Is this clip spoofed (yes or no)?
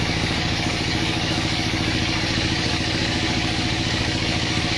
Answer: yes